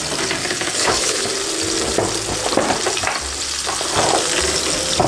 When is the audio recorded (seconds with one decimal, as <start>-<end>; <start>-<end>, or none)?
0.0-0.4; 1.3-5.1